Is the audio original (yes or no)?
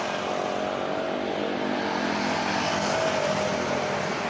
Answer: yes